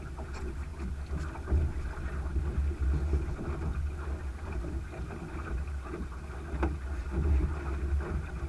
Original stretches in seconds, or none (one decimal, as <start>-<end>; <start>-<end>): 0.0-3.7; 6.2-8.5